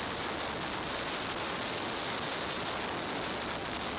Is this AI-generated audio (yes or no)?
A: no